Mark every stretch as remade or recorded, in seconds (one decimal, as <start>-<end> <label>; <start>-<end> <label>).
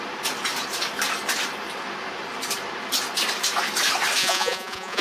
0.0-4.2 recorded; 4.2-5.0 remade